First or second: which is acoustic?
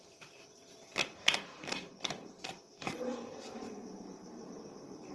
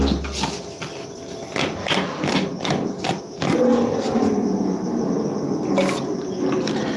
second